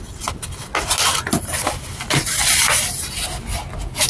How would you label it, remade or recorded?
recorded